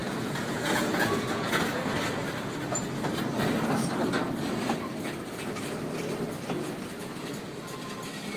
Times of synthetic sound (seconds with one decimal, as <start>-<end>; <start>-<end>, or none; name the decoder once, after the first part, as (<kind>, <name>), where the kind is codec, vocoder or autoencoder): 0.0-1.6 (vocoder, Vocos)